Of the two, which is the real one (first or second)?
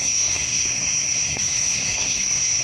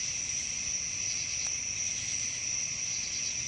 second